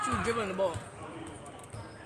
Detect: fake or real real